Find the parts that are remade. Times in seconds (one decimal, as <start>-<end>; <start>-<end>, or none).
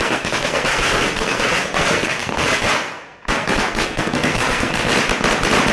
0.0-4.9